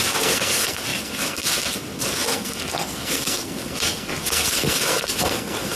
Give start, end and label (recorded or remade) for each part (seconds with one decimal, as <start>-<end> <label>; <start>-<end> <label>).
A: 0.0-5.8 remade